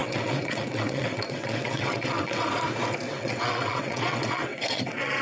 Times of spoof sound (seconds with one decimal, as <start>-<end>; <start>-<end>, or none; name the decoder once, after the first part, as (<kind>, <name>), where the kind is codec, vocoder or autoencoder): 0.0-2.5 (vocoder, WaveNeXt); 3.1-5.2